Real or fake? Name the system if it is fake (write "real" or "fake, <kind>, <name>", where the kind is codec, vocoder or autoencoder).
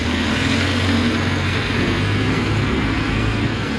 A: fake, codec, SNAC